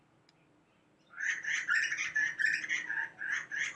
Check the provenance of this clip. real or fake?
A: real